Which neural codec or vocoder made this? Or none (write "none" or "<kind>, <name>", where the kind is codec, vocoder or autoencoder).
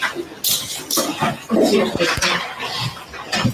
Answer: none